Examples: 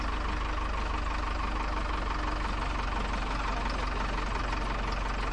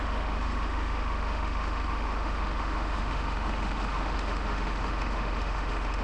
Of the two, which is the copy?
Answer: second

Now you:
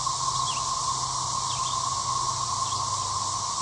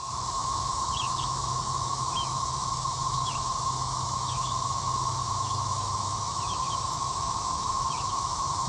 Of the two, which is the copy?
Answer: second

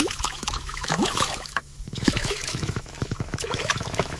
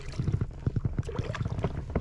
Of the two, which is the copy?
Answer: first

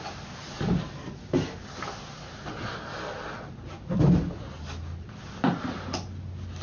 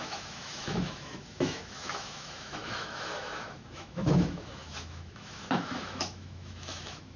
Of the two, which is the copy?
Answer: second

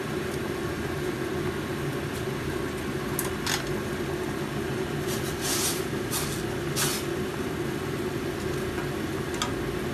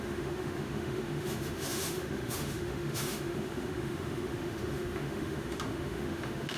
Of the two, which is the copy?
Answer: second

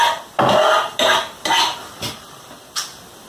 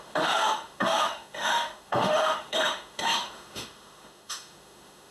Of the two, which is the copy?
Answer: second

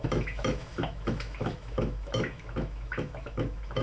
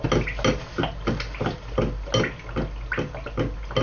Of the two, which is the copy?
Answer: first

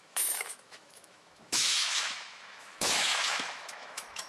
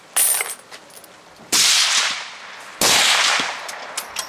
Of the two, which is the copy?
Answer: first